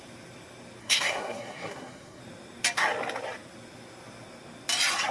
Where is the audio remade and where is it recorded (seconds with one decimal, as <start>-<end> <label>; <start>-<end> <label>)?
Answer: 0.0-0.8 recorded; 0.8-2.2 remade; 2.2-5.1 recorded